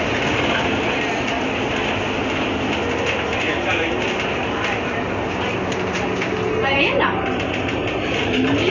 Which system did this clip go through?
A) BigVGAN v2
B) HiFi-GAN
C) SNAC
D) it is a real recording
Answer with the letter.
D